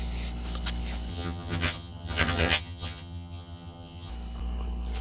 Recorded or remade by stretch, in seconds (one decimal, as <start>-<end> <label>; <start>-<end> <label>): 0.0-1.1 recorded; 1.1-4.1 remade; 4.1-5.0 recorded